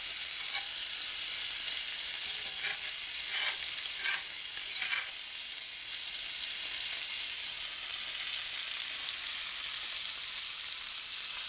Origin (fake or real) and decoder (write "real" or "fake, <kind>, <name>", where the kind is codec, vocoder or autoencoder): real